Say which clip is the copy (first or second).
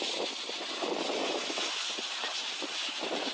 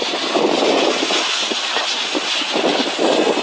first